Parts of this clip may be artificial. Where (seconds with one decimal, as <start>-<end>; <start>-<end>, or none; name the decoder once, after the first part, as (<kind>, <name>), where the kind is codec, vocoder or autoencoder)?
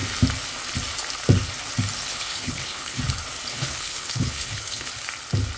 2.1-3.0 (codec, HILCodec); 3.5-4.9